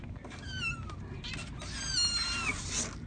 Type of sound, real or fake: real